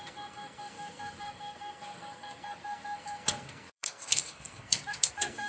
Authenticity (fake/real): fake